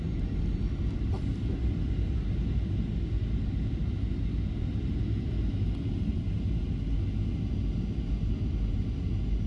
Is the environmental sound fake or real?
real